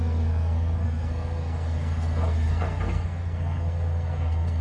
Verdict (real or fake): fake